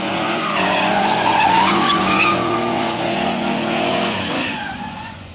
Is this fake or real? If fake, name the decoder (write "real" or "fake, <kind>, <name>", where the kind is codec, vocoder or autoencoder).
fake, vocoder, Vocos